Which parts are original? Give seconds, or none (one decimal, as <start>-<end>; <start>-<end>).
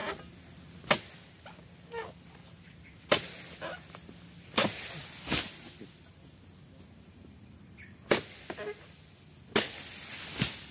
0.0-10.7